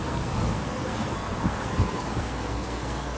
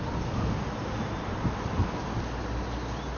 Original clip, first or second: second